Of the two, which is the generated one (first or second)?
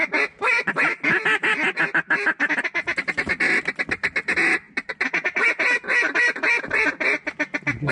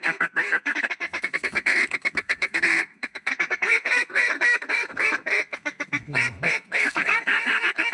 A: second